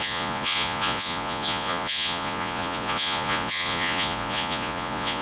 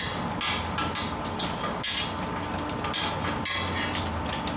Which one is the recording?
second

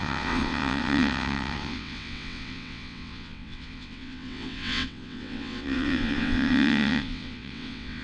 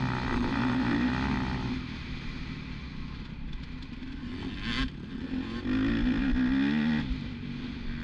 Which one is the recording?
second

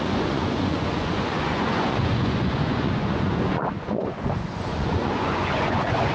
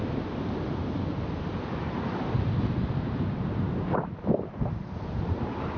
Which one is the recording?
second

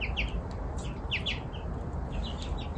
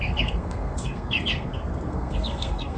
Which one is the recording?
first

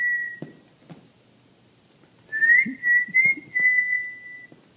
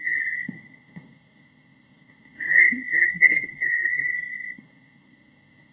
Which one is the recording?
first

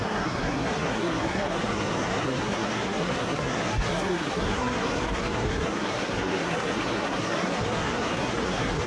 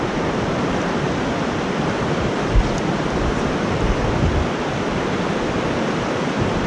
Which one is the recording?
second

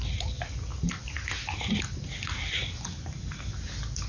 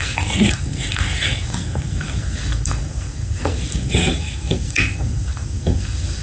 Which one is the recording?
first